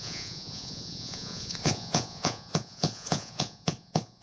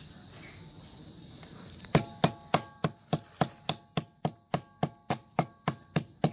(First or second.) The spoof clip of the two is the first